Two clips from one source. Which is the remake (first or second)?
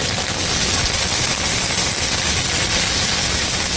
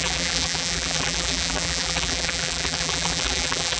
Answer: second